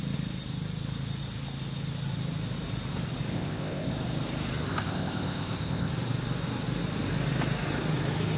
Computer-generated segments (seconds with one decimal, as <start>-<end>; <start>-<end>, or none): 3.3-3.9; 4.7-5.9